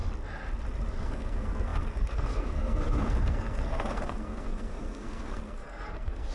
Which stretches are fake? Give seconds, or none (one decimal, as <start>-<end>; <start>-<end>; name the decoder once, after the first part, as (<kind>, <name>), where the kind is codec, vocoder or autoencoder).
1.0-6.3 (codec, SNAC)